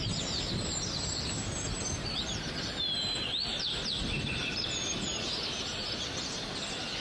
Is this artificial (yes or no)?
no